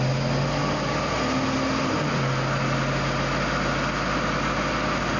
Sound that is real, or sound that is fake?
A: real